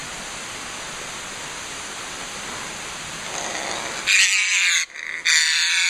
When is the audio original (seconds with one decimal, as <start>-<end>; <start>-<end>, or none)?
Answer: 0.0-5.9